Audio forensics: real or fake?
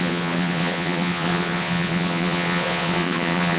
fake